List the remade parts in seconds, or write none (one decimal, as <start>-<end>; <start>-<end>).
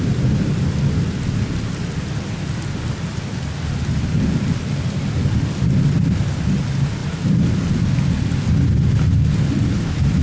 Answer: none